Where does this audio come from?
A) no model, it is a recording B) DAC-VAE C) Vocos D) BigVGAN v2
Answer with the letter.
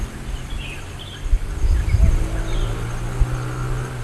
A